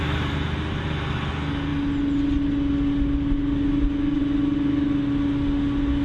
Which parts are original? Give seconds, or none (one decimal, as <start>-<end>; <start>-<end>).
0.0-6.0